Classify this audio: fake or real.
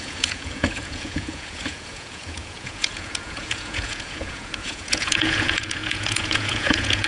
fake